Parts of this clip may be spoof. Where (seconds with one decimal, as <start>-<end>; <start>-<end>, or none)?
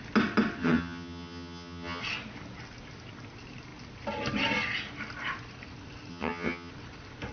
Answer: 0.6-2.0; 6.1-6.7